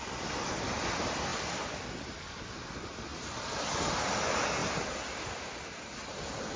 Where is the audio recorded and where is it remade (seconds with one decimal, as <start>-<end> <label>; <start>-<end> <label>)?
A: 0.0-6.6 recorded